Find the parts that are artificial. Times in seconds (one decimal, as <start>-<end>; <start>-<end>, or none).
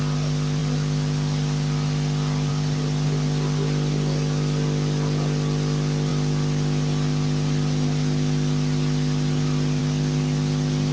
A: none